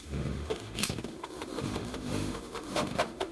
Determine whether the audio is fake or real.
fake